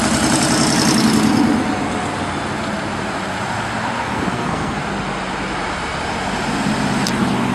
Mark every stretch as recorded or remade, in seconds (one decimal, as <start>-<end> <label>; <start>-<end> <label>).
0.0-4.0 recorded; 4.0-4.8 remade; 4.8-7.5 recorded